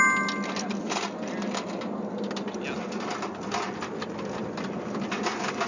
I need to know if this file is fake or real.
real